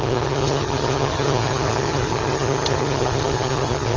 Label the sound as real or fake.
fake